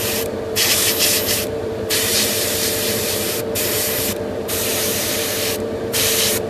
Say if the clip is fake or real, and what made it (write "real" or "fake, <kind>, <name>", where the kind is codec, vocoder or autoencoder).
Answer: fake, vocoder, BigVGAN v2